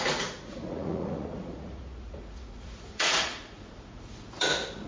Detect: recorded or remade remade